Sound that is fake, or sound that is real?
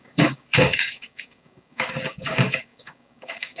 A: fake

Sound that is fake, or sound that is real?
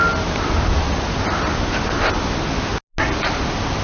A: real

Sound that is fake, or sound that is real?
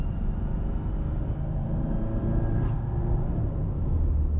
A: real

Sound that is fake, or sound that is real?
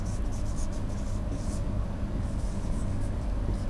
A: fake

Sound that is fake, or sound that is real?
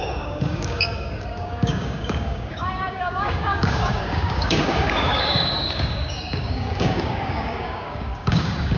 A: fake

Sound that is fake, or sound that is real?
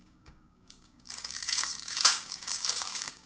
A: fake